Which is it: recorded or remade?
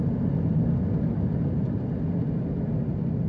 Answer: recorded